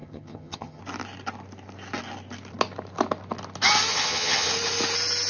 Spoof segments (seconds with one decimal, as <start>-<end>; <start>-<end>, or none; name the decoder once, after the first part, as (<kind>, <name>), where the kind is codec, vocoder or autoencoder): 0.0-0.8 (vocoder, HiFi-GAN); 3.9-4.5